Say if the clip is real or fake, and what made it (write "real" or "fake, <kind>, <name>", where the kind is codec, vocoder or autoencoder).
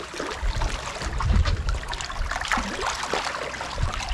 real